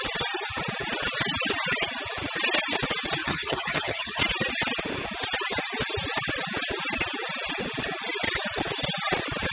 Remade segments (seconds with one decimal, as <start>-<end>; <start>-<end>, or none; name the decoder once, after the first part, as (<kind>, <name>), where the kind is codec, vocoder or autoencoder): 3.2-4.2 (vocoder, HiFi-GAN)